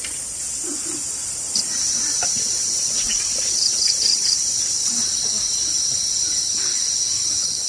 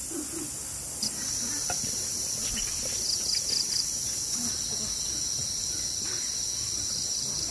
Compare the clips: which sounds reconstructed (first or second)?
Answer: first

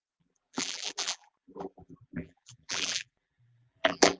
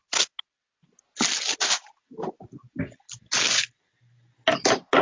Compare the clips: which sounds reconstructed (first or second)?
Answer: first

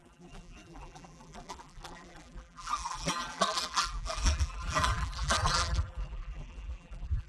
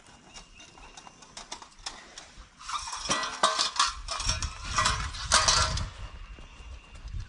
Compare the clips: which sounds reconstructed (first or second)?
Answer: first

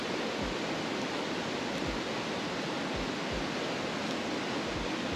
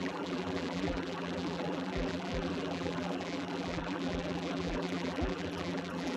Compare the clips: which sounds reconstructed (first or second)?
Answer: second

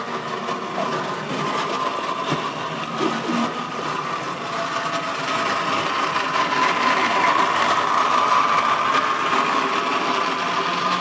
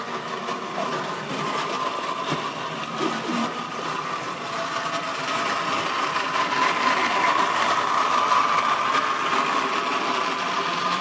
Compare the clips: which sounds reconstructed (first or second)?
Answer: second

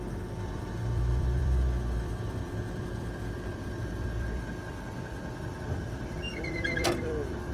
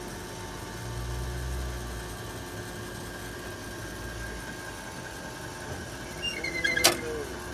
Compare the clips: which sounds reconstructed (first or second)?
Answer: first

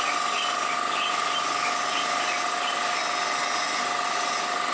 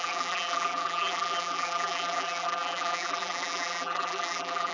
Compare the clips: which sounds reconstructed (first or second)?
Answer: second